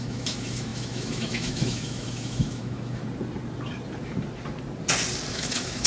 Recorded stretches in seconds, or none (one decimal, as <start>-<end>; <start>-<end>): 3.0-5.3